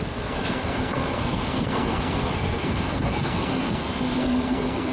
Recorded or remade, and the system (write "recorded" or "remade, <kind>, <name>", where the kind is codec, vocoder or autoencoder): remade, codec, SNAC